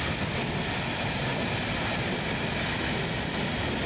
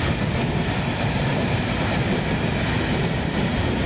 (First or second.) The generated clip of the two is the second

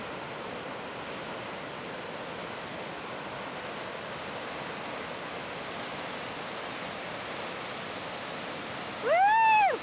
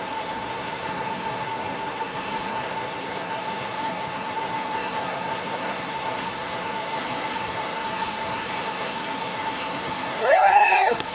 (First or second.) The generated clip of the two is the second